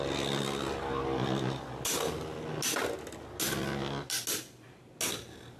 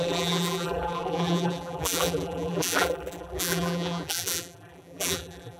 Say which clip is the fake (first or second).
second